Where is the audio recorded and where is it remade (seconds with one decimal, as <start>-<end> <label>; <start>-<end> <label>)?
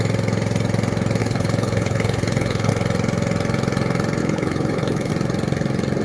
0.0-1.2 recorded; 1.2-2.7 remade; 2.7-4.2 recorded; 4.2-5.1 remade; 5.1-6.0 recorded